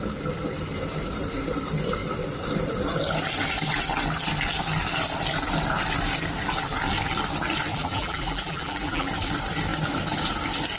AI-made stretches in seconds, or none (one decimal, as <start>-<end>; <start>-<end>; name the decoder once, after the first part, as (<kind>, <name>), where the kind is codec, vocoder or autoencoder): 7.7-9.1 (vocoder, BigVGAN v2)